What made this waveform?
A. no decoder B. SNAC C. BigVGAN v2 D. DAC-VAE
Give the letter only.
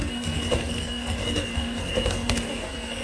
B